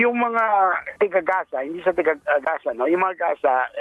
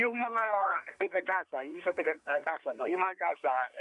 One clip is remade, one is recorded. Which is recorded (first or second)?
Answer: first